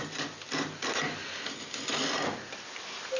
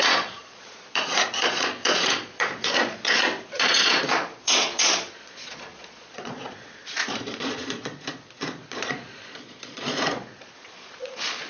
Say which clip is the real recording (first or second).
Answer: first